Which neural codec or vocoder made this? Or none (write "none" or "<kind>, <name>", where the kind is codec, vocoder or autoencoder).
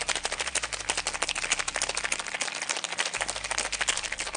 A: none